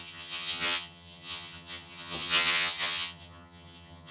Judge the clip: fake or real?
fake